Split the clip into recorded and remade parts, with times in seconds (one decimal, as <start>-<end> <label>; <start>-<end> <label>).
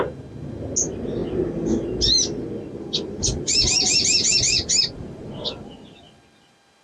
0.0-2.7 recorded; 2.7-6.2 remade; 6.2-6.8 recorded